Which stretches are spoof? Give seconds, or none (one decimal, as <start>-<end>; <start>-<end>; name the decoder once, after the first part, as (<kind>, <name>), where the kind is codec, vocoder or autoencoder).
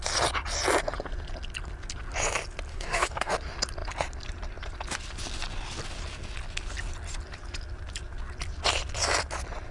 2.7-3.3 (codec, DAC)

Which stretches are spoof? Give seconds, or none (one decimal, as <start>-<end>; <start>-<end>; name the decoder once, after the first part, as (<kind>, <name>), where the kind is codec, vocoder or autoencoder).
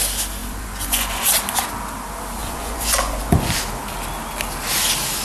0.4-1.2 (vocoder, Vocos); 2.4-3.6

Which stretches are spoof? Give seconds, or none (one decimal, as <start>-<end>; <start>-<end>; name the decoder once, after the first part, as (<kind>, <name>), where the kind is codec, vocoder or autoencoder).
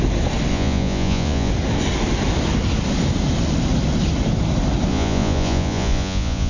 0.5-1.5 (vocoder, Vocos); 4.9-6.5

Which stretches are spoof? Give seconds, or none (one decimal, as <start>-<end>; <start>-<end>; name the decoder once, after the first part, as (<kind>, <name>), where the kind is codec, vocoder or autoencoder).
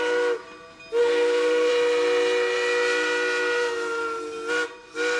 1.0-1.7 (codec, SNAC)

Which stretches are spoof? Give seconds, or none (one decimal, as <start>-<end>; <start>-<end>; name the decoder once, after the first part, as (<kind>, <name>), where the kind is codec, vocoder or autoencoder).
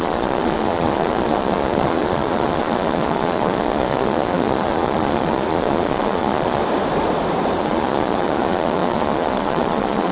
0.0-6.6 (vocoder, Vocos); 7.6-10.1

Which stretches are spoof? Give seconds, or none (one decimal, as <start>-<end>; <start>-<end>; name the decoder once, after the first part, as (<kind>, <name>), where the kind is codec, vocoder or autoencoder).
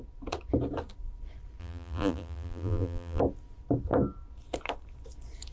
1.6-3.2 (vocoder, BigVGAN v2)